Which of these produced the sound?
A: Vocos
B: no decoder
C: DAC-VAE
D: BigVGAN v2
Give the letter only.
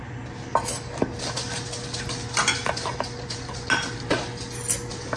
B